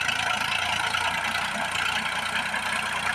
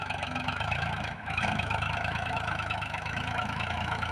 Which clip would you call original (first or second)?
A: first